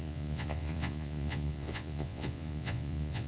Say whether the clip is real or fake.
fake